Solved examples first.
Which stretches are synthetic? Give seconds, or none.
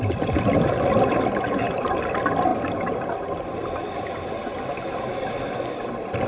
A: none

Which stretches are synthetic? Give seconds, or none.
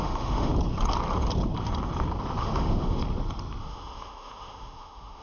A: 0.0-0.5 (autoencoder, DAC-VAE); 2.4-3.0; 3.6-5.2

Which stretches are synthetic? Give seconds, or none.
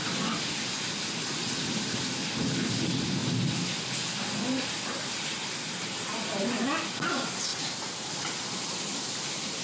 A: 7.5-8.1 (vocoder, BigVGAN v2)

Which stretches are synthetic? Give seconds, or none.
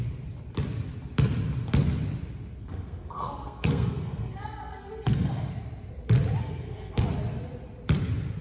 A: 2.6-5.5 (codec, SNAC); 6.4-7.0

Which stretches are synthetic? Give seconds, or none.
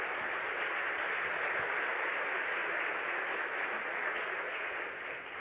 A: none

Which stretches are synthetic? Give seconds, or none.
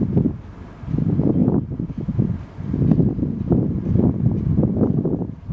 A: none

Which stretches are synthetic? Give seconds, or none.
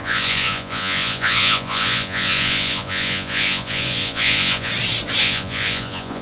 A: 0.0-4.7 (vocoder, Vocos); 5.2-6.2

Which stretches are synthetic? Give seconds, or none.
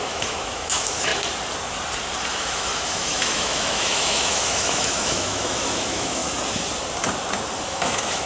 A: 0.0-1.1 (autoencoder, DAC-VAE); 2.3-6.2; 7.6-8.3